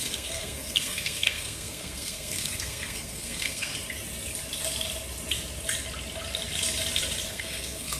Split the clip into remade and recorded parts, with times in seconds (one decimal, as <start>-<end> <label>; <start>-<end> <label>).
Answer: 0.0-3.7 remade; 3.7-7.3 recorded; 7.3-8.0 remade